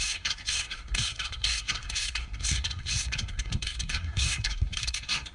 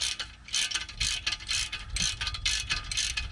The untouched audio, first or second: second